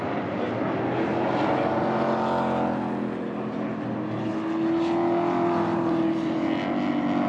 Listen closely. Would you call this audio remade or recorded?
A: recorded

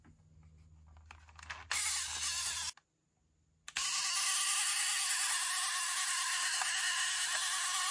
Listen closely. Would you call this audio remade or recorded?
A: recorded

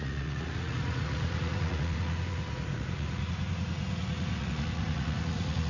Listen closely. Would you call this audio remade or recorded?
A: remade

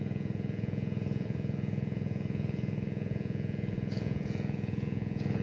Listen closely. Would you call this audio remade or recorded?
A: remade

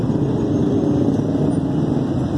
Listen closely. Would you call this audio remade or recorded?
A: recorded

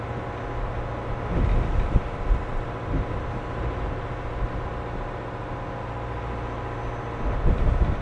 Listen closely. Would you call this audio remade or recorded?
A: recorded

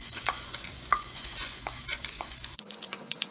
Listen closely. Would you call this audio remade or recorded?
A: remade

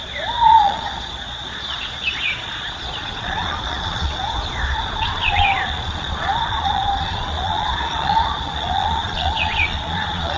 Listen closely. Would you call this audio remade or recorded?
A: remade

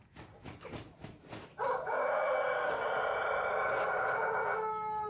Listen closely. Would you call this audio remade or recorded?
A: recorded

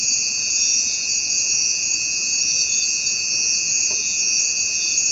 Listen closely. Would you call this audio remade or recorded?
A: remade